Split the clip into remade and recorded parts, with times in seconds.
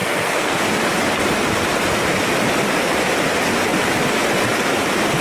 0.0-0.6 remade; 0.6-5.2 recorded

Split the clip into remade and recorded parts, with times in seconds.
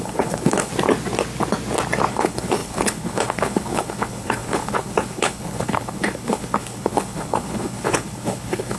0.0-0.7 remade; 0.7-2.1 recorded; 2.1-8.8 remade